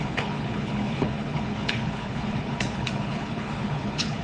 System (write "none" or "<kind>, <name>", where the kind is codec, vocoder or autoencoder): codec, HILCodec